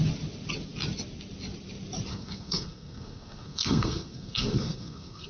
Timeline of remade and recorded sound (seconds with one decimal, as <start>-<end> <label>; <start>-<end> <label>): 0.0-2.1 recorded; 2.1-5.3 remade

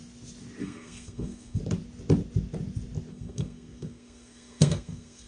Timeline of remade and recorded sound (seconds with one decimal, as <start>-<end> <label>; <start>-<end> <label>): 0.0-0.6 recorded; 0.6-1.6 remade; 1.6-3.1 recorded; 3.1-5.3 remade

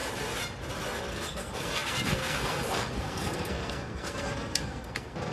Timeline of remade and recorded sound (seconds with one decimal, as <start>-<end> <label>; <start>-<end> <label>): 0.0-1.1 recorded; 1.1-5.3 remade

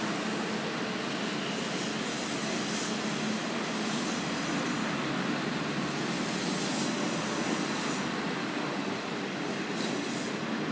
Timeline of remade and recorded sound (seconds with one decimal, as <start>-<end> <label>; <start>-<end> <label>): 0.0-10.7 recorded

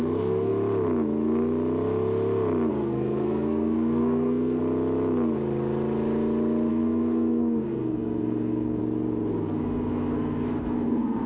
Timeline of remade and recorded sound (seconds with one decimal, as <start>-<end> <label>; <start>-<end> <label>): 0.0-0.5 remade; 0.5-2.7 recorded; 2.7-4.6 remade; 4.6-6.7 recorded; 6.7-8.8 remade; 8.8-9.4 recorded; 9.4-11.3 remade

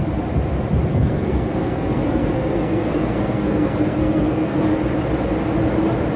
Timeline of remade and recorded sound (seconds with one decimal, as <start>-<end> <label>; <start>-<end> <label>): 0.0-0.9 recorded; 0.9-4.6 remade; 4.6-6.2 recorded